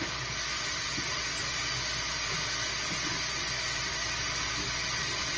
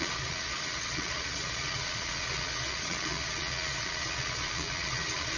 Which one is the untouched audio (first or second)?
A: first